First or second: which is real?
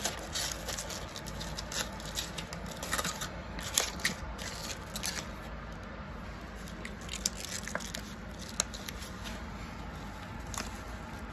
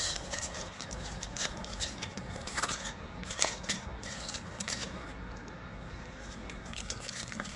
first